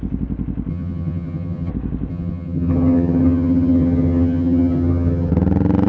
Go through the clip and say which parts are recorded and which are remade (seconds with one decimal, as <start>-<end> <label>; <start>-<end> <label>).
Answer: 0.0-0.7 recorded; 0.7-1.7 remade; 1.7-2.1 recorded; 2.1-5.3 remade; 5.3-5.9 recorded